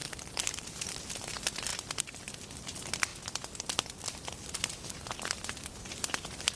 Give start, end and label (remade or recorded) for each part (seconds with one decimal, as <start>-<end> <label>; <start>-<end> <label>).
0.0-1.1 remade; 1.1-6.6 recorded